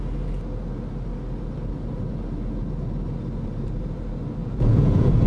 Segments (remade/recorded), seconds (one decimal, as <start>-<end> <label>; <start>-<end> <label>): 0.0-4.4 recorded; 4.4-5.3 remade